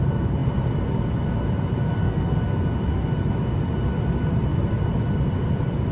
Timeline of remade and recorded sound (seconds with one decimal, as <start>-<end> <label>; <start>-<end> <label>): 0.0-5.9 recorded